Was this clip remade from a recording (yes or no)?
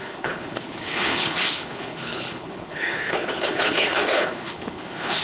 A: yes